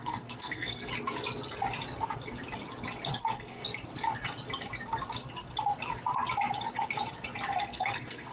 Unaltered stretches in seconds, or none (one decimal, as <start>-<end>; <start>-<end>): 0.9-3.2; 3.6-7.6